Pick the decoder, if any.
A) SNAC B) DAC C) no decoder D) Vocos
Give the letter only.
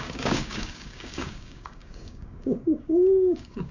B